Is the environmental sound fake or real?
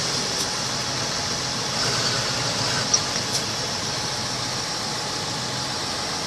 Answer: real